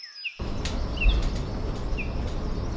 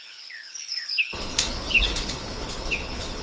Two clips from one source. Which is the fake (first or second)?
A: second